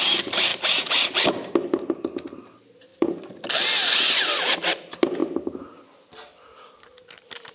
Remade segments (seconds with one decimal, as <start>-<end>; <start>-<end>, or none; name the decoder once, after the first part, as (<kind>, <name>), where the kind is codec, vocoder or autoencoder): none